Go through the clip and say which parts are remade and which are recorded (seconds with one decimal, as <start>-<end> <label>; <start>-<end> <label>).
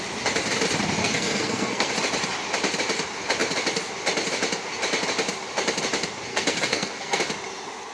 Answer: 0.0-1.0 recorded; 1.0-1.9 remade; 1.9-6.3 recorded; 6.3-7.2 remade; 7.2-7.9 recorded